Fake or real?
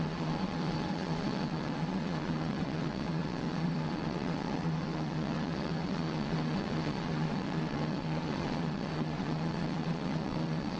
fake